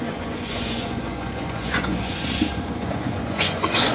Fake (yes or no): yes